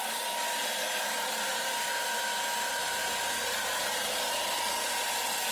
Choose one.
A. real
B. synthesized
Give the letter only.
A